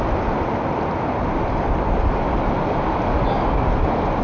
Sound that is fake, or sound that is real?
real